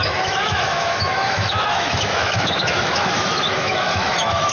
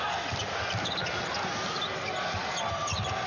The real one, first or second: second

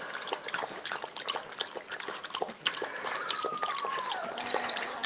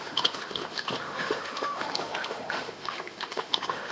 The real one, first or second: first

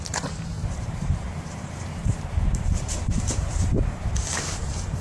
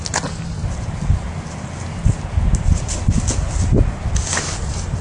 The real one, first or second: second